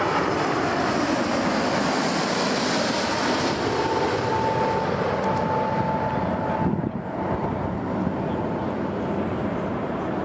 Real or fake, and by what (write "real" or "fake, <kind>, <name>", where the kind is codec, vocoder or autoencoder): real